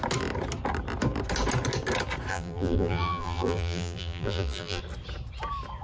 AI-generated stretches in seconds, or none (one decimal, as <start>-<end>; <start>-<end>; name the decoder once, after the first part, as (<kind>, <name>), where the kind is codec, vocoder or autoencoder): 2.3-4.8 (vocoder, BigVGAN v2)